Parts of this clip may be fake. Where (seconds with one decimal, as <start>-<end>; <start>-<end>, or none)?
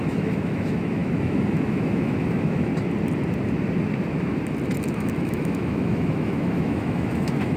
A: 0.0-2.7; 4.9-7.6